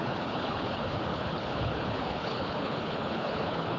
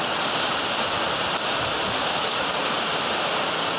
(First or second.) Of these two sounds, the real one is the second